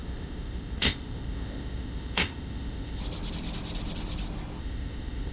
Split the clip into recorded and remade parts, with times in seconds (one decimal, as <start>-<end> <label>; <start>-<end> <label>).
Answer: 0.0-3.0 remade; 3.0-4.6 recorded; 4.6-5.3 remade